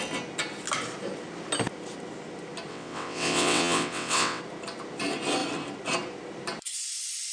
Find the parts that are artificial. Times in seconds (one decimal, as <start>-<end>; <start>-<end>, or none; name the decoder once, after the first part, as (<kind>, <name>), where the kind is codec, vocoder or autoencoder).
2.7-4.4 (vocoder, WaveNeXt)

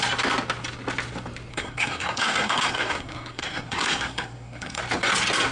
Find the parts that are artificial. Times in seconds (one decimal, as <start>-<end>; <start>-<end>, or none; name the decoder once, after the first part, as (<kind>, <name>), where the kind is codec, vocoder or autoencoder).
1.5-4.8 (codec, SNAC)

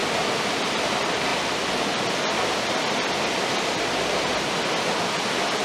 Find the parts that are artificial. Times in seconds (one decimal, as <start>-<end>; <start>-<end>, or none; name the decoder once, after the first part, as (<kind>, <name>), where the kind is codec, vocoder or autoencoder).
none

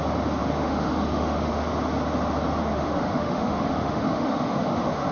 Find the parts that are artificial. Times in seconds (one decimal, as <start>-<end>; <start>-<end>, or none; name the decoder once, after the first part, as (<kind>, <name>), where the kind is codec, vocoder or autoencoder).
0.4-1.7 (autoencoder, DAC-VAE); 2.6-5.1

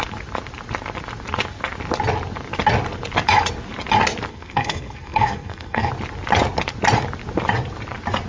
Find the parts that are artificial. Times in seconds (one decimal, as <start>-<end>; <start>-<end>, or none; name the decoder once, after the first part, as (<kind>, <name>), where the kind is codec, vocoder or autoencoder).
4.3-5.9 (codec, SNAC)

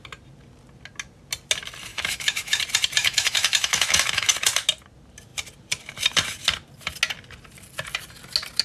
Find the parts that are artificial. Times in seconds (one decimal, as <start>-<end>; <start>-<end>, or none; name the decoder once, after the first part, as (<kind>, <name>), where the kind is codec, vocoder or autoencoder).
1.9-2.6 (autoencoder, DAC-VAE); 3.0-4.3

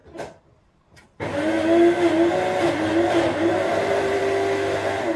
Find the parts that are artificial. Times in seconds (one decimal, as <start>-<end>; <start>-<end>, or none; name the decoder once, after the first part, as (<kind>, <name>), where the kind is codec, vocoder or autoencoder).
3.1-4.2 (vocoder, BigVGAN v2)

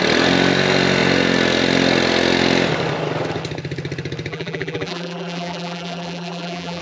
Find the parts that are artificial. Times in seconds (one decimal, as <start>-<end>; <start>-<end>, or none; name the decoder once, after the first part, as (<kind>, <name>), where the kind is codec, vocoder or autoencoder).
4.3-6.8 (vocoder, BigVGAN v2)